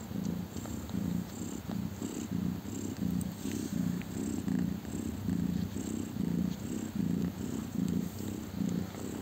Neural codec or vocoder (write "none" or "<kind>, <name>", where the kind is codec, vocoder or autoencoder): none